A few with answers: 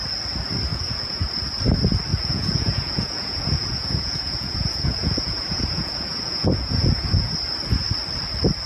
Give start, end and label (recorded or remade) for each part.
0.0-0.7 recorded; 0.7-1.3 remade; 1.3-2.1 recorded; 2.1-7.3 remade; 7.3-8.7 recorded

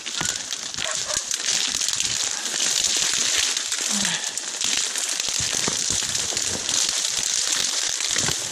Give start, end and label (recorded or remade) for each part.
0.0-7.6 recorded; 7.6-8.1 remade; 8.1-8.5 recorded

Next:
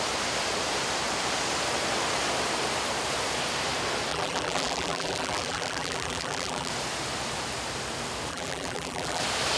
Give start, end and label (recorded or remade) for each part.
0.0-4.1 recorded; 4.1-6.7 remade; 6.7-8.3 recorded; 8.3-9.2 remade; 9.2-9.6 recorded

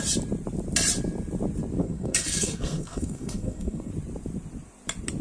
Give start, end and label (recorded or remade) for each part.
0.0-1.8 recorded; 1.8-3.9 remade; 3.9-5.2 recorded

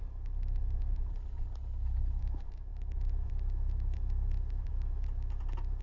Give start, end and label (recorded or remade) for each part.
0.0-1.1 recorded; 1.1-2.2 remade; 2.2-5.8 recorded

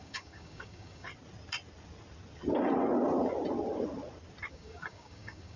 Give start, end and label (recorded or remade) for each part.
0.0-1.1 remade; 1.1-4.5 recorded; 4.5-5.6 remade